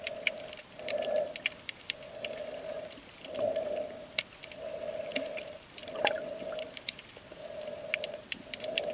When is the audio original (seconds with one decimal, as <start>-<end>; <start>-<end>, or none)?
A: 0.0-8.9